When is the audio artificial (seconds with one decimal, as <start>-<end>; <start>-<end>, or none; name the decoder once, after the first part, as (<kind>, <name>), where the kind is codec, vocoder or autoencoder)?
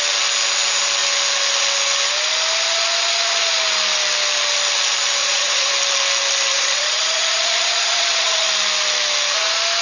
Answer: 5.2-5.7 (vocoder, Vocos); 6.5-8.5